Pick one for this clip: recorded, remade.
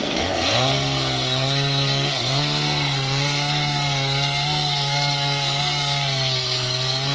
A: remade